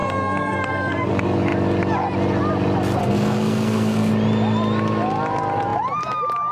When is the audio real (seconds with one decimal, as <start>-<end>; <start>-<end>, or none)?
1.1-3.0; 4.1-6.5